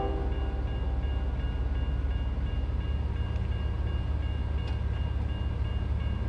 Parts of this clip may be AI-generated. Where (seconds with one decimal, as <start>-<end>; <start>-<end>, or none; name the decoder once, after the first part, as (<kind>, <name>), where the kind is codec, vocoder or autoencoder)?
none